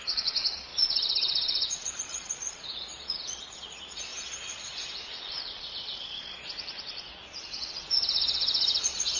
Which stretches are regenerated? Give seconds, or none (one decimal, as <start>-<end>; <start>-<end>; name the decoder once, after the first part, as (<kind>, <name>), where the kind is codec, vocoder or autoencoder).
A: 0.0-9.2 (vocoder, Vocos)